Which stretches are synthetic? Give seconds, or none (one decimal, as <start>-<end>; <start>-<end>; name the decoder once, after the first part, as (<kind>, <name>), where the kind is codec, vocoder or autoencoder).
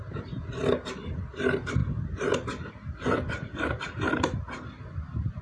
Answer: none